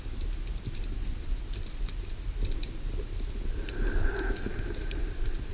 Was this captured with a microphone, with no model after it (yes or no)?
yes